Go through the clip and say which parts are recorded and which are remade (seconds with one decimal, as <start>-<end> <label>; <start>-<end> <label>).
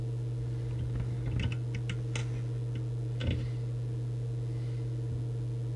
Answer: 0.0-5.8 recorded